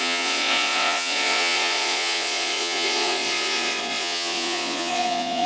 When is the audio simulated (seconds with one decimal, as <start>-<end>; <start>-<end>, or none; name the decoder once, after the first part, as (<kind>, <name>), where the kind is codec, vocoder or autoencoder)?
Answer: 0.0-5.5 (vocoder, Vocos)